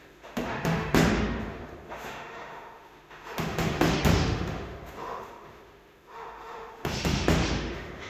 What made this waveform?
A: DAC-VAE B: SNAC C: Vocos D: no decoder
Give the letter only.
A